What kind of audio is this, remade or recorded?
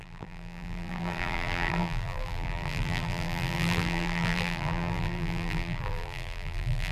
remade